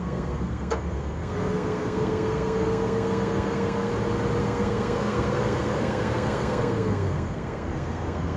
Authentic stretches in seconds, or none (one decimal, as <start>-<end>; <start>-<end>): 3.9-4.4